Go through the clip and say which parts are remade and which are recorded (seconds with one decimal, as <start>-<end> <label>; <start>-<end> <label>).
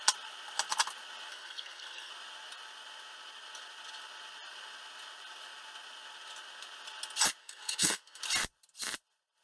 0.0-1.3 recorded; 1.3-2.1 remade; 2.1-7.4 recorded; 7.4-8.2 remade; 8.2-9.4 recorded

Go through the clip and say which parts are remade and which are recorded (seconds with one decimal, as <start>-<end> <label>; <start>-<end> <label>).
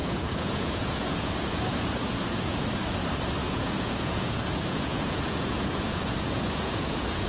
0.0-2.6 remade; 2.6-3.4 recorded; 3.4-7.3 remade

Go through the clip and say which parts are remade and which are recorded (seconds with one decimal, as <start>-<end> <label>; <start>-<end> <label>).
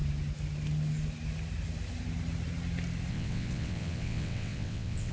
0.0-3.1 recorded; 3.1-5.1 remade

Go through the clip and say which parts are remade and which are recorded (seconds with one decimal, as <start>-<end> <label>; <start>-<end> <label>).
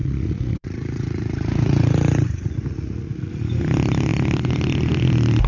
0.0-3.3 remade; 3.3-5.5 recorded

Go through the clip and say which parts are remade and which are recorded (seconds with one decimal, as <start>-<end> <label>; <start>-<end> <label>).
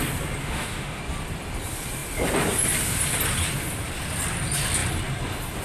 0.0-0.4 recorded; 0.4-1.0 remade; 1.0-5.6 recorded